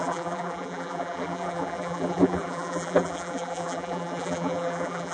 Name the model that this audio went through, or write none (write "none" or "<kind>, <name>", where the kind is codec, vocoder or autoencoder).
vocoder, BigVGAN v2